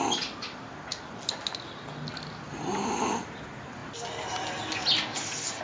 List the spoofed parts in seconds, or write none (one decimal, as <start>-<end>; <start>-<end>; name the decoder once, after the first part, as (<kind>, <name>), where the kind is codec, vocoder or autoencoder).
none